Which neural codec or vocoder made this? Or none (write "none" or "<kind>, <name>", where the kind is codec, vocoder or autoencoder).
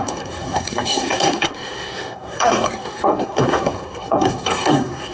codec, SNAC